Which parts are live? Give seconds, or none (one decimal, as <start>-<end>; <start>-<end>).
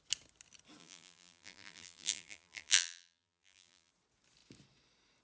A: 0.0-0.8; 3.9-5.2